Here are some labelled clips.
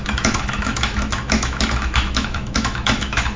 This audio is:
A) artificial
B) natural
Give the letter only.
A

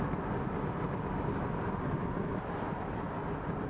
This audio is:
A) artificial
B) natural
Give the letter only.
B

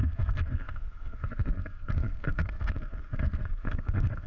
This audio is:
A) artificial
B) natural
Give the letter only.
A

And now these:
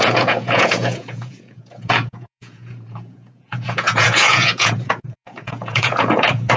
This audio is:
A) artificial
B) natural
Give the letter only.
A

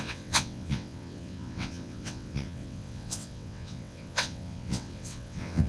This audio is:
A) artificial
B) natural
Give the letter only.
A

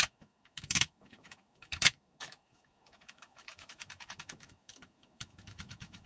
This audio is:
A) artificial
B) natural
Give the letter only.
A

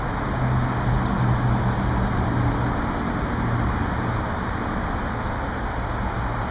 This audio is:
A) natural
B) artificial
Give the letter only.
A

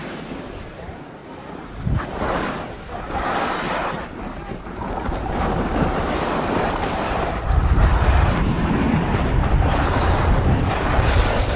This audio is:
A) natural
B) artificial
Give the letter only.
B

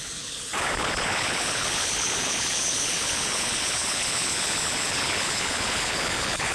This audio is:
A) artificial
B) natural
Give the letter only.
A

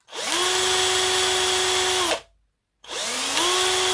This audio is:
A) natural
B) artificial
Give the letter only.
A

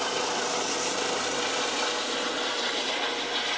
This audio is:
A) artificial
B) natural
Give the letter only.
B